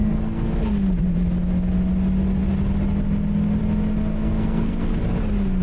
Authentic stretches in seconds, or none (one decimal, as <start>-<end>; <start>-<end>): 0.5-4.1; 5.0-5.6